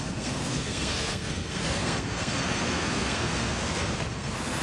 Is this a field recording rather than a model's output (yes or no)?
no